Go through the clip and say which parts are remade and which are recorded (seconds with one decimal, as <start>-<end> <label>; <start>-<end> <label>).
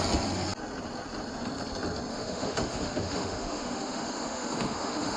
0.0-2.1 recorded; 2.1-5.2 remade